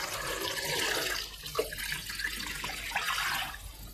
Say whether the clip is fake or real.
real